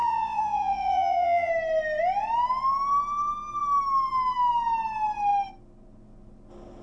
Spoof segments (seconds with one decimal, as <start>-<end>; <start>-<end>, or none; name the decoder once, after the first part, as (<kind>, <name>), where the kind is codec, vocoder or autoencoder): 0.0-1.5 (vocoder, Vocos)

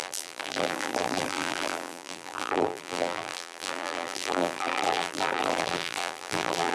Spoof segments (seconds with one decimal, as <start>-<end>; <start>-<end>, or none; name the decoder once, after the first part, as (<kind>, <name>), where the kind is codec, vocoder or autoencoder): 0.0-6.7 (vocoder, BigVGAN v2)

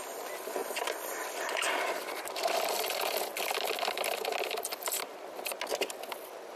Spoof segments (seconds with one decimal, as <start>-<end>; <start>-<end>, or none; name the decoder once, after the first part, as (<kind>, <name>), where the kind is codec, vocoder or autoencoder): 0.6-2.4 (vocoder, BigVGAN v2)

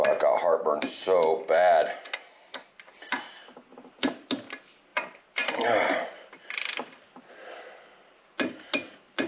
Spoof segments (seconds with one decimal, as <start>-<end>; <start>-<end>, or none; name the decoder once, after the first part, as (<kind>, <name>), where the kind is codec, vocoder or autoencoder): 4.9-6.7 (vocoder, BigVGAN v2)

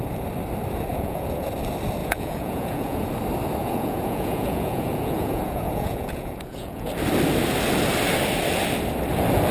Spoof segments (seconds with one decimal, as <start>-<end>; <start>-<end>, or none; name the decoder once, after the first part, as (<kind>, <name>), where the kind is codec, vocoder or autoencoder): 0.9-1.5 (vocoder, Vocos); 2.0-3.1; 3.6-6.9